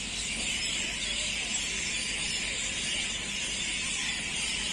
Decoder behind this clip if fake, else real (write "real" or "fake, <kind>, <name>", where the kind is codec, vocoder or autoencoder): real